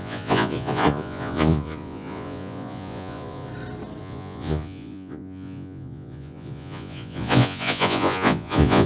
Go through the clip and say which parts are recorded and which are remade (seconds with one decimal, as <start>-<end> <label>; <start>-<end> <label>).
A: 0.0-3.5 remade; 3.5-4.0 recorded; 4.0-8.9 remade